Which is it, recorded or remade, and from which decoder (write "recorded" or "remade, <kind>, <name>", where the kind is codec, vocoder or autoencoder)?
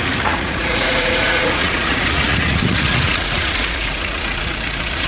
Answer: remade, vocoder, Vocos